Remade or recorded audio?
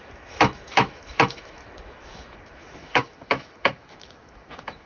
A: remade